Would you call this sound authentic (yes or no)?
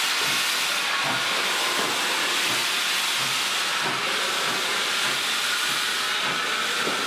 yes